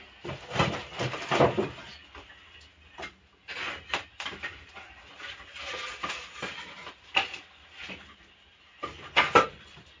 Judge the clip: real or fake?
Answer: real